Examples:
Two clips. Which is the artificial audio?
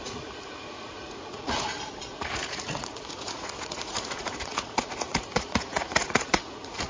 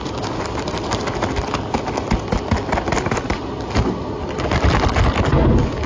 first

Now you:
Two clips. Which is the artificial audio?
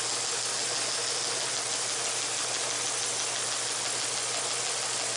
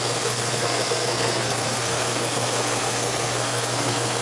second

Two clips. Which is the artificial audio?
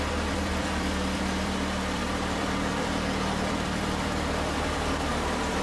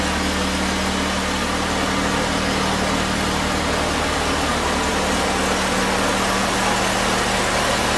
first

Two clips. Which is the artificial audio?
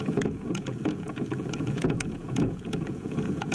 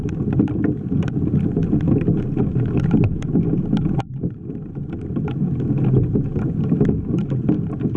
first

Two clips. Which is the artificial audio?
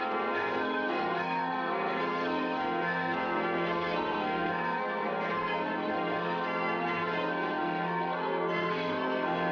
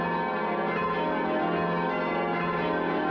first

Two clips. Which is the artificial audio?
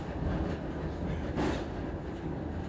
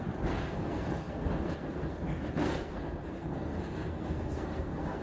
second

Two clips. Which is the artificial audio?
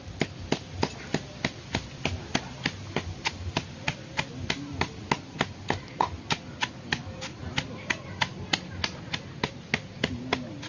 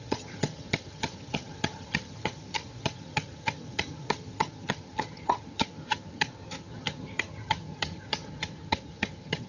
second